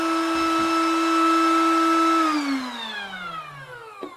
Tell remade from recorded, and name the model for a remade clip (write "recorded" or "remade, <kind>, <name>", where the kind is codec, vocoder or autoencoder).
recorded